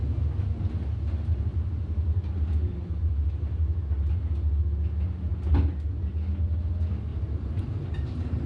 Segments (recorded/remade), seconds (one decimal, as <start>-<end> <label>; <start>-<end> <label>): 0.0-7.1 recorded; 7.1-8.5 remade